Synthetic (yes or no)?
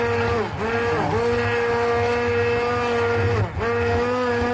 no